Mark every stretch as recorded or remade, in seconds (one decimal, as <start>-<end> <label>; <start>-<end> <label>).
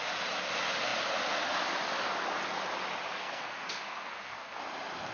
0.0-3.2 recorded; 3.2-4.6 remade; 4.6-5.1 recorded